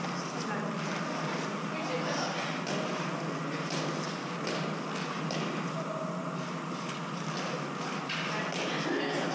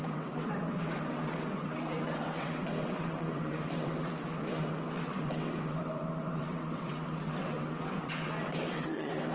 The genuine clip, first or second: first